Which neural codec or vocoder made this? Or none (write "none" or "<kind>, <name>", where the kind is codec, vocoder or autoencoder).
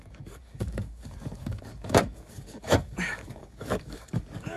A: codec, DAC